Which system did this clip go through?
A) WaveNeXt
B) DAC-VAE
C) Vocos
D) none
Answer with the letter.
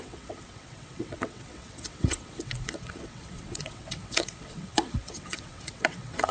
A